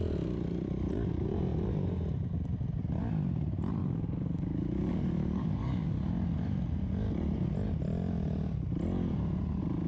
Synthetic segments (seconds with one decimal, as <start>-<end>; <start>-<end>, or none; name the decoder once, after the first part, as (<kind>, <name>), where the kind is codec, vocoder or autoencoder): 3.8-6.1 (codec, DAC)